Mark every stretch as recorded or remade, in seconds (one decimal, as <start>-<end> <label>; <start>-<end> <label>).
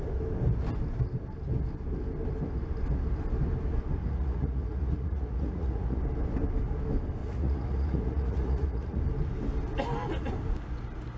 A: 0.0-4.0 recorded; 4.0-6.0 remade; 6.0-7.2 recorded; 7.2-9.0 remade; 9.0-11.2 recorded